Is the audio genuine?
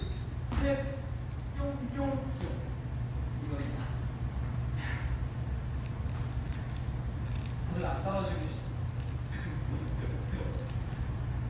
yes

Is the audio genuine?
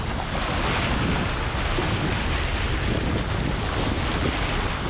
yes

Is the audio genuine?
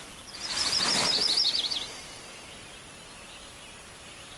yes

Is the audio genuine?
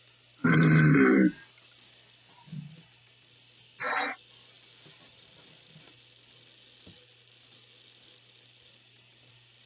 yes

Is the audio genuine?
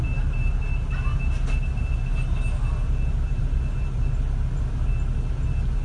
yes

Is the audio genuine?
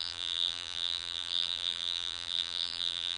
no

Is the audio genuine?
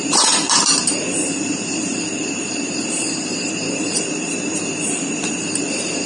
no